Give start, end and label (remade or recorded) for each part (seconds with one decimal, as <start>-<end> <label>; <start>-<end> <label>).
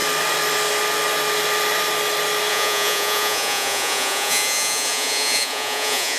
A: 0.0-2.5 recorded; 2.5-6.2 remade